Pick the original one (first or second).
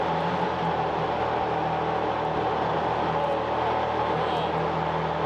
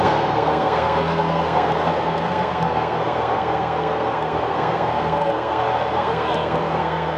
first